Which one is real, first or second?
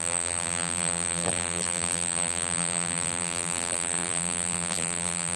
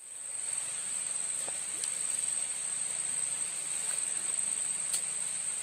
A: second